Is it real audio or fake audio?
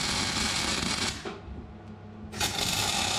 real